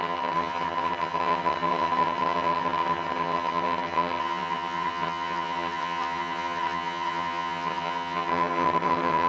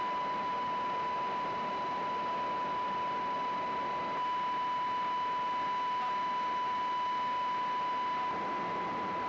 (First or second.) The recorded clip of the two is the second